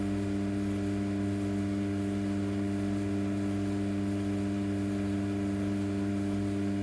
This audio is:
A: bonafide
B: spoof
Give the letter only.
A